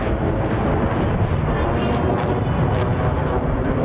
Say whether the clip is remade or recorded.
recorded